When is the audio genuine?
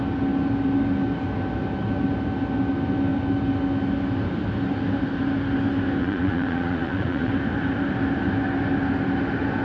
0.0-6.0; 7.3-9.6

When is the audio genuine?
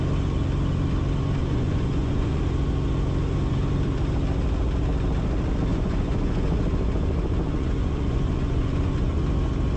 0.0-1.4; 2.4-5.7; 9.2-9.8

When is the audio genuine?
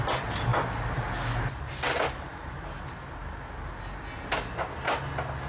0.0-5.5